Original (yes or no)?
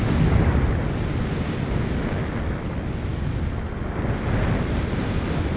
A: yes